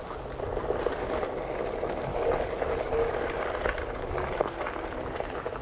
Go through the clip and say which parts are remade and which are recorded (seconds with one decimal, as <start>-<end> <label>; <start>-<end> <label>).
0.0-2.1 recorded; 2.1-2.9 remade; 2.9-5.6 recorded